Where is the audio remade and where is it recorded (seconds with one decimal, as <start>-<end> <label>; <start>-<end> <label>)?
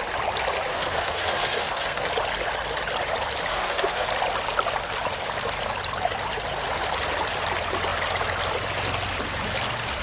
0.0-0.7 recorded; 0.7-2.1 remade; 2.1-3.5 recorded; 3.5-4.1 remade; 4.1-10.0 recorded